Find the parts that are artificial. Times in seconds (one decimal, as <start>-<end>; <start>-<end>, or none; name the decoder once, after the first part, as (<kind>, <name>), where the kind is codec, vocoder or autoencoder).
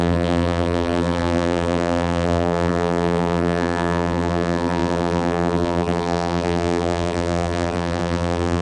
0.0-8.6 (vocoder, BigVGAN v2)